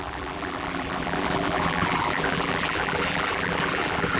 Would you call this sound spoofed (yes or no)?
yes